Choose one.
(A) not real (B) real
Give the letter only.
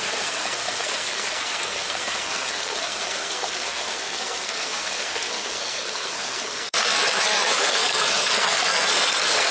A